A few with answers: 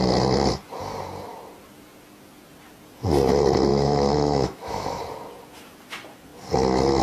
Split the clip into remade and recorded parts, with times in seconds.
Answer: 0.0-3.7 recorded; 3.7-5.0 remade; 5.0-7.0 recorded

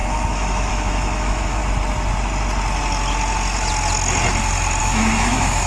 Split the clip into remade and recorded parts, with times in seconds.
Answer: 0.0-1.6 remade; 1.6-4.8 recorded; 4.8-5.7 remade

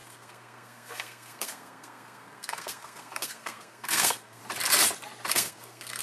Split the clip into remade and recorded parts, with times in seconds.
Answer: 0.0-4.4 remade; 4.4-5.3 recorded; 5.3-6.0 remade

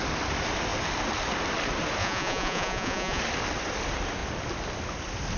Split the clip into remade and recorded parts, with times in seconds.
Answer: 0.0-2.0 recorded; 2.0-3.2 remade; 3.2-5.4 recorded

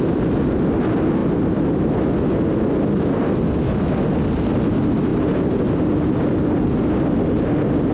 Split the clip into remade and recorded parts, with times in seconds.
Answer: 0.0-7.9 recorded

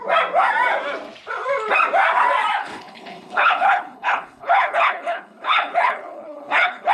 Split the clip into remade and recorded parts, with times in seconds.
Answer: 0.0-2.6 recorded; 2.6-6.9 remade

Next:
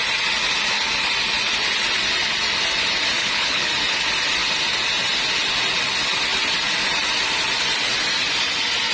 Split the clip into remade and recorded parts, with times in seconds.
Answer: 0.0-3.2 recorded; 3.2-3.7 remade; 3.7-8.9 recorded

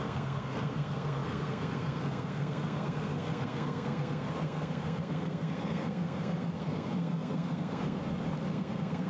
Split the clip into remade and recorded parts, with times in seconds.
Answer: 0.0-8.0 remade; 8.0-8.5 recorded; 8.5-9.1 remade